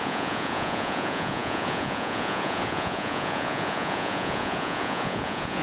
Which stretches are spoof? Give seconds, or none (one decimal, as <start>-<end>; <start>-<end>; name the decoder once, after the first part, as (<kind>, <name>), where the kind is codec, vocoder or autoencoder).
0.0-5.6 (vocoder, Vocos)